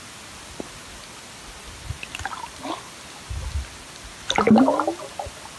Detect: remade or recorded recorded